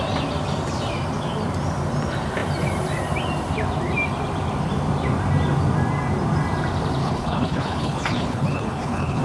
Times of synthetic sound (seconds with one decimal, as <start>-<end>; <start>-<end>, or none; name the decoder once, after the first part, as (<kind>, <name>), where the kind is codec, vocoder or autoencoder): 7.0-9.2 (codec, HILCodec)